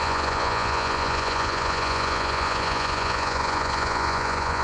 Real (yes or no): no